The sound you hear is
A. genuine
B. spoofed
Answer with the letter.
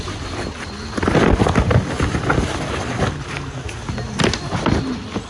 A